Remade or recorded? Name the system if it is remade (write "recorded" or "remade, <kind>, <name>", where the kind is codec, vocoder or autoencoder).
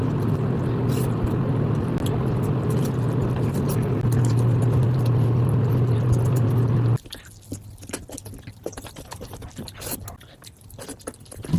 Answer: recorded